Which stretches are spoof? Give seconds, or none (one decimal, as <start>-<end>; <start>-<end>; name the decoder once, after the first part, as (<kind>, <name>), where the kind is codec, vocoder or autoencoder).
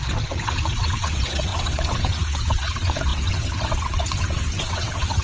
0.0-5.2 (vocoder, WaveNeXt)